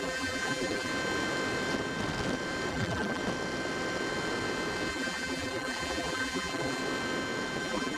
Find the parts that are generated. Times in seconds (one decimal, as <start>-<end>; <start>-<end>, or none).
0.0-0.9; 2.7-3.2; 4.9-6.8; 7.6-8.0